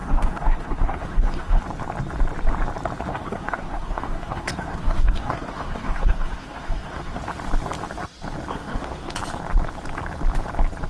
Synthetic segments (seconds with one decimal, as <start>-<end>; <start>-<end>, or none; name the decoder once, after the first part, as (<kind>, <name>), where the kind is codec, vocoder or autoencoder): 0.0-1.6 (codec, SNAC); 3.1-7.2; 8.5-9.1